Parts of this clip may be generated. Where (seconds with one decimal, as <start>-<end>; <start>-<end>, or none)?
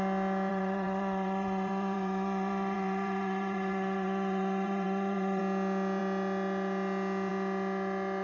0.5-5.4